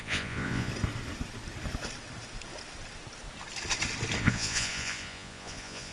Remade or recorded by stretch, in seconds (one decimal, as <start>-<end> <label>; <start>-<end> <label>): 0.0-0.7 remade; 0.7-4.2 recorded; 4.2-5.9 remade